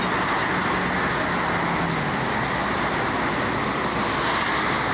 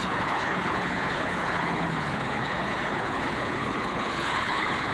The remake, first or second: second